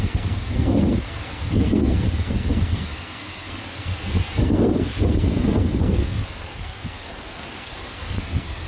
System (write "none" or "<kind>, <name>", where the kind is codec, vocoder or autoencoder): codec, SNAC